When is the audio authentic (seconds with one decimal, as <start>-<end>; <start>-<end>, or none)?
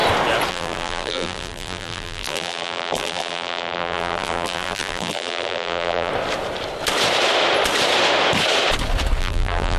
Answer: 0.0-0.5; 6.1-9.2